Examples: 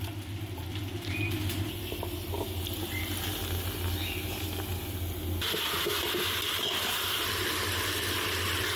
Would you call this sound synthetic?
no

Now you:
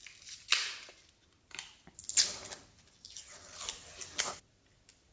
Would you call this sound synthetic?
no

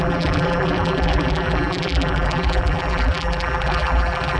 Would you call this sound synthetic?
yes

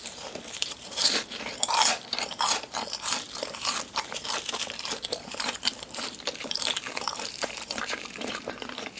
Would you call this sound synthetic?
yes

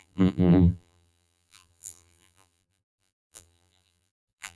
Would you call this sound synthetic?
yes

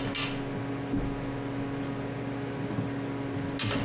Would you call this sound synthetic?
no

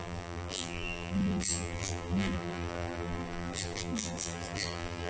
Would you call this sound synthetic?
yes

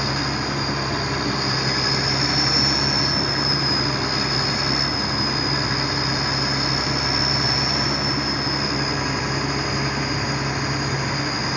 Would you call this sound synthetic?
no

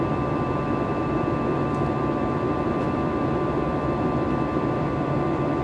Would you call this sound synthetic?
yes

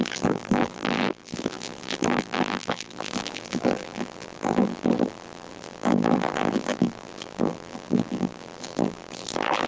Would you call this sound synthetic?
yes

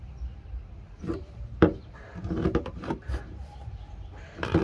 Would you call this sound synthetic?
yes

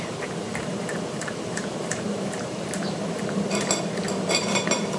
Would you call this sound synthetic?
yes